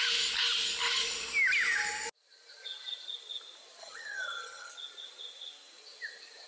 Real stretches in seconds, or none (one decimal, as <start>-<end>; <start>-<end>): 0.0-3.8; 4.7-6.5